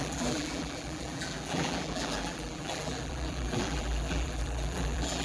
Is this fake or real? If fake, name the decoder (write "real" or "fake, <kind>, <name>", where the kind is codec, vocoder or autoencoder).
fake, vocoder, BigVGAN v2